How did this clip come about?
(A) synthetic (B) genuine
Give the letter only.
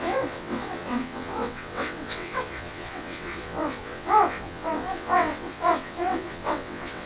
A